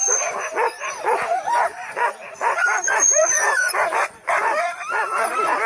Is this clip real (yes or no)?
no